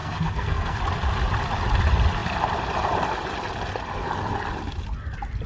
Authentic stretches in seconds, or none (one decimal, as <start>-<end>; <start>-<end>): 0.8-5.5